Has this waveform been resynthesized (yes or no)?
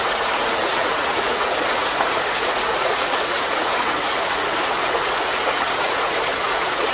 yes